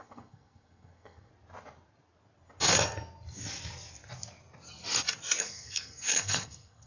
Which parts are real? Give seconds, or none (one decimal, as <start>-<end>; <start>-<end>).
1.3-5.4